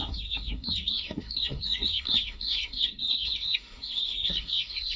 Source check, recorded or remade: remade